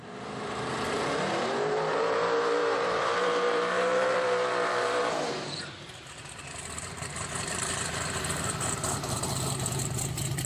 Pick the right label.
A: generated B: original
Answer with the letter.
A